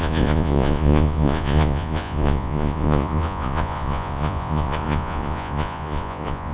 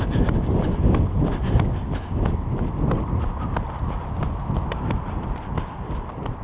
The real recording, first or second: second